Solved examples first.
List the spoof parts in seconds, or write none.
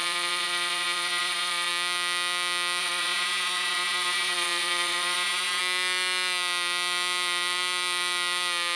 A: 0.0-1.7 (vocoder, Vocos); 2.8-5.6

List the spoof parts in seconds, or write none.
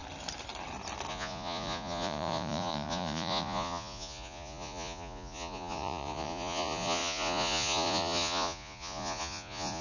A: 1.1-9.8 (vocoder, Vocos)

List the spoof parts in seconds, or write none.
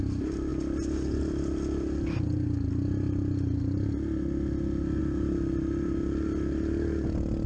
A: none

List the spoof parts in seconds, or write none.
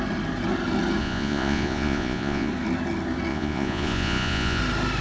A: 1.0-2.5 (vocoder, Vocos); 3.3-4.6